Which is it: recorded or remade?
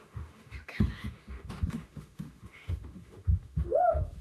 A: remade